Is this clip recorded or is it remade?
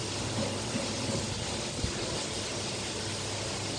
recorded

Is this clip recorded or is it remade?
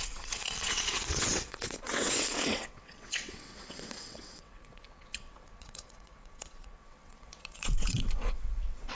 remade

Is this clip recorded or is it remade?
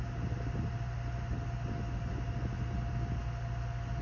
recorded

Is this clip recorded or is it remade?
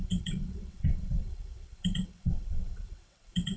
remade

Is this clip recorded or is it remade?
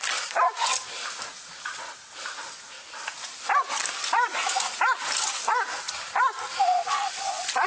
recorded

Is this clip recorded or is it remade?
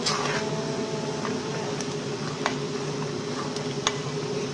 recorded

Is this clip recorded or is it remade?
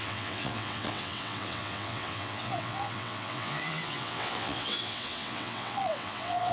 remade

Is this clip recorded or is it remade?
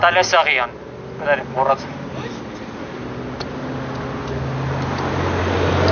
recorded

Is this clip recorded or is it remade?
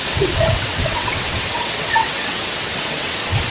remade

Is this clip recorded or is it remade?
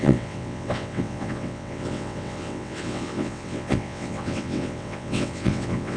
remade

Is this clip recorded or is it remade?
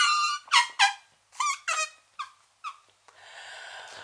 recorded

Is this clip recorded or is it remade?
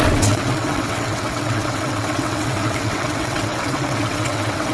remade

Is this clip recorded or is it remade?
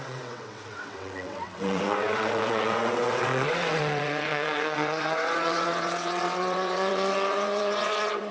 remade